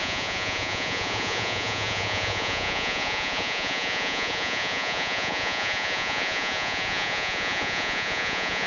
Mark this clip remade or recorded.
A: remade